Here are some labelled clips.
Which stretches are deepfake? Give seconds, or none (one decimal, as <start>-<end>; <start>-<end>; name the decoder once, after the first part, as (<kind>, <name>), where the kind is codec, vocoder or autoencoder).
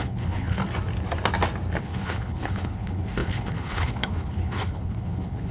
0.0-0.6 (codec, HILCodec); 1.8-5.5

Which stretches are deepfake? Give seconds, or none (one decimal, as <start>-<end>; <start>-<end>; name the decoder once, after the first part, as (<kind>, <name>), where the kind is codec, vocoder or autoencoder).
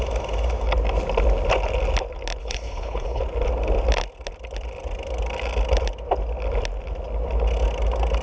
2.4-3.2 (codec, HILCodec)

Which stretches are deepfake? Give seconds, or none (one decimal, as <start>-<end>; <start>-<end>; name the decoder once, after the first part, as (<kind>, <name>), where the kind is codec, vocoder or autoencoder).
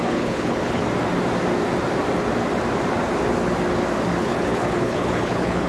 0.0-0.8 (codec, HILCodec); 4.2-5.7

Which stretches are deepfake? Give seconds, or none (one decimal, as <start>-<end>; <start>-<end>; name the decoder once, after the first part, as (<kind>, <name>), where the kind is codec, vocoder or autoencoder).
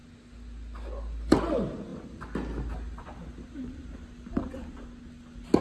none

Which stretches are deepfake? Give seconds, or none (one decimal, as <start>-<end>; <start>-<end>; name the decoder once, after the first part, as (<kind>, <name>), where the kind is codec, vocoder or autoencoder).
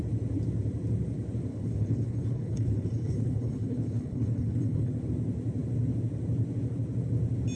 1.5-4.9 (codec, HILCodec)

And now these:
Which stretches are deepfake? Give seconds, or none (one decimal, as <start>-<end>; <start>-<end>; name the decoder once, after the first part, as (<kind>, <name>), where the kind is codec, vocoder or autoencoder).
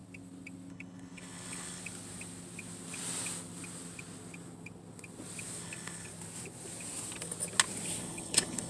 0.7-1.8 (codec, HILCodec); 5.6-6.1; 8.0-8.7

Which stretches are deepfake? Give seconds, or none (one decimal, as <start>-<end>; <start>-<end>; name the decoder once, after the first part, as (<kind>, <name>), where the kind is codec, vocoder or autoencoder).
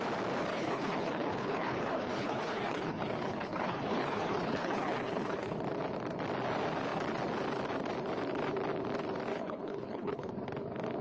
0.5-5.6 (codec, HILCodec); 9.3-10.3